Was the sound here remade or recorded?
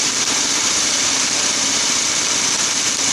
remade